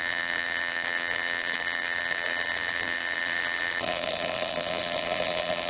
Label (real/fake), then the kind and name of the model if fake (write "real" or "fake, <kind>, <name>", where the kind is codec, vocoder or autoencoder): fake, vocoder, BigVGAN v2